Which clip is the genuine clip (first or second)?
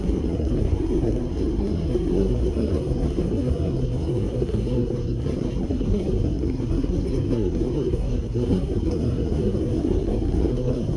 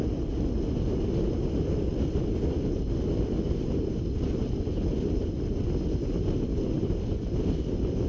second